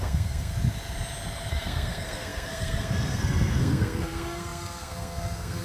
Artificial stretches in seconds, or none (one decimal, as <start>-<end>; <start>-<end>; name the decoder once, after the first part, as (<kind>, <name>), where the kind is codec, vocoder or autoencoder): 0.0-0.5 (codec, SNAC); 1.5-5.6

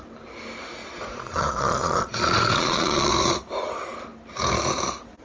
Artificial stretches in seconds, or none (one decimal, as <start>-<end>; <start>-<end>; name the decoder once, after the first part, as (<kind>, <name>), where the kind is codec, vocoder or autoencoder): 0.8-3.1 (vocoder, Vocos)

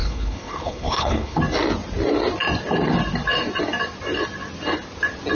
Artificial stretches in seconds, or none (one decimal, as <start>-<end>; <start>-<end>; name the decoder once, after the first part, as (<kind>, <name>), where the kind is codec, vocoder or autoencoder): 0.0-1.4 (codec, HILCodec)